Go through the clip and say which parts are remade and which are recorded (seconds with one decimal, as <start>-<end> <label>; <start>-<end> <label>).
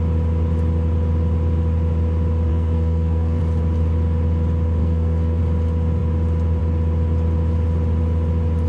0.0-2.5 recorded; 2.5-3.4 remade; 3.4-4.8 recorded; 4.8-5.4 remade; 5.4-8.7 recorded